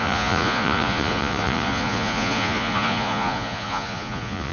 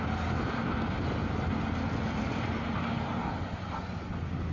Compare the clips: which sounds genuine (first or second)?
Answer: second